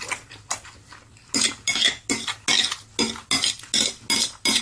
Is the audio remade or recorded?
recorded